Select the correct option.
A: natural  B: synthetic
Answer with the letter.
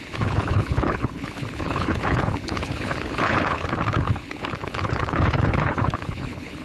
B